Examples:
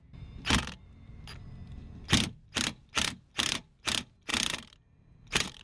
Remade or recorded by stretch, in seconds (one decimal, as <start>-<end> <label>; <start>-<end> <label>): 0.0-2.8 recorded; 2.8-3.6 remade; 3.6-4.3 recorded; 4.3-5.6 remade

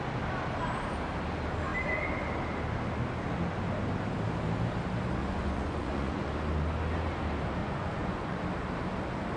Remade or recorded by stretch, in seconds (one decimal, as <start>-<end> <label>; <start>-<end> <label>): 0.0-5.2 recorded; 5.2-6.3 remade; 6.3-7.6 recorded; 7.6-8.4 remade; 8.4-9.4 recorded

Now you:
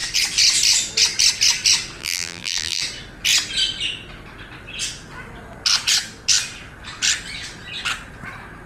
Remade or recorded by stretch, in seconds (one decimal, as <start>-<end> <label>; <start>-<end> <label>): 0.0-2.0 recorded; 2.0-2.8 remade; 2.8-8.7 recorded

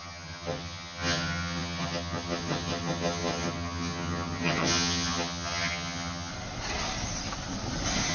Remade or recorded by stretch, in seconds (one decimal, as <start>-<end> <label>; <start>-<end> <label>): 0.0-6.3 remade; 6.3-8.1 recorded

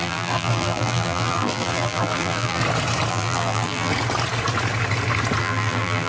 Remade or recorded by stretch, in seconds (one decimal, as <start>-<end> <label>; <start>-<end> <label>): 0.0-2.6 remade; 2.6-3.1 recorded; 3.1-3.9 remade; 3.9-5.4 recorded; 5.4-6.1 remade

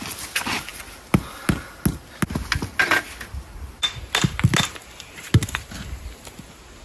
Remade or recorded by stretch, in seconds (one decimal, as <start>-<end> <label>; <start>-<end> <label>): 0.0-6.8 recorded

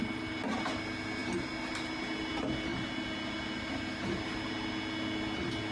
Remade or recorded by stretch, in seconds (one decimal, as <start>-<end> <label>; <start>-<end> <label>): 0.0-5.7 recorded

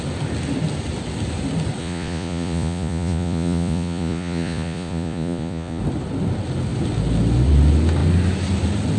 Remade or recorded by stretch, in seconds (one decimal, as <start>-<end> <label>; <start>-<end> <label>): 0.0-1.8 recorded; 1.8-5.8 remade; 5.8-9.0 recorded